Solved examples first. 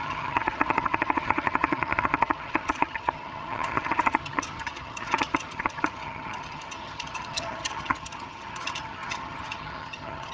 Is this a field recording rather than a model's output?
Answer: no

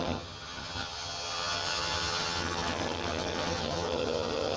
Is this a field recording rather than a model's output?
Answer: no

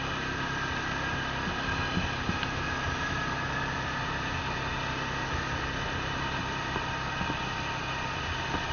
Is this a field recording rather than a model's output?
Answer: yes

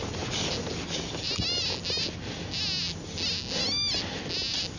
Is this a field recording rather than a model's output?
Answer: yes